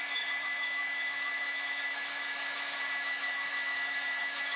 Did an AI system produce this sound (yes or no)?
yes